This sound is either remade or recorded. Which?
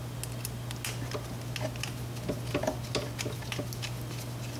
recorded